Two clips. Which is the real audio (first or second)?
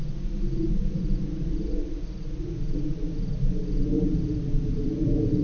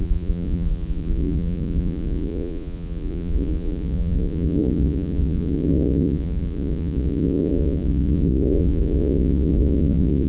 first